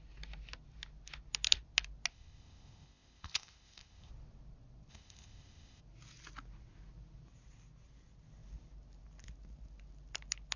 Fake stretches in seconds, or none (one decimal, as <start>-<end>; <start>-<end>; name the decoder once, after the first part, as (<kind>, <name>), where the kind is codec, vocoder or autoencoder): 2.1-4.1 (codec, ZipCodec); 4.9-5.8